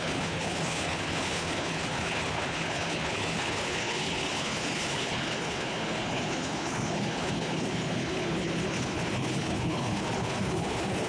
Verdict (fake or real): fake